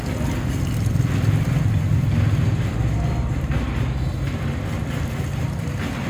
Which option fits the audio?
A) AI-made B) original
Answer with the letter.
B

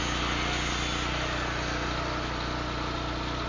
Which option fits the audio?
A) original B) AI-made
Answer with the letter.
A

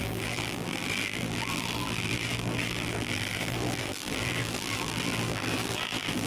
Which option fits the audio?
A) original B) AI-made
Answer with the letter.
B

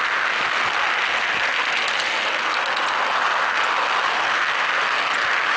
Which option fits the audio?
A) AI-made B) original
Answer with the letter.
B